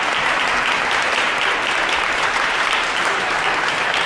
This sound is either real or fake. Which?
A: fake